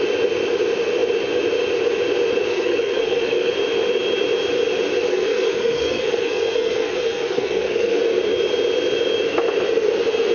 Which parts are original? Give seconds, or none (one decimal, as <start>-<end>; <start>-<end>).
0.0-2.5; 3.5-5.1; 8.0-10.3